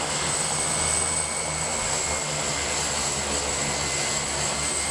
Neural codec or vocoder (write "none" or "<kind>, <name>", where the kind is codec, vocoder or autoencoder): none